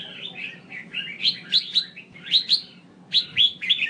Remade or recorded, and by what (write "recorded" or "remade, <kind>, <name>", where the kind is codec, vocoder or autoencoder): recorded